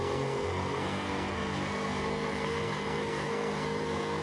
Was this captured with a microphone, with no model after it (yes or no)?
no